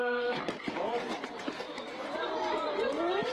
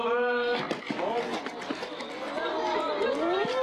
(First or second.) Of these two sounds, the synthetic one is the first